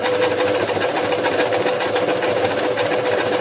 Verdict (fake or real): real